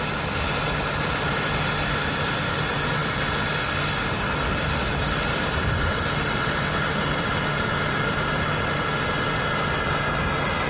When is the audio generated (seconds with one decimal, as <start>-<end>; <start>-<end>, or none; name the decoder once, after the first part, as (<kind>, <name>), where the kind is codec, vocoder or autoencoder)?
none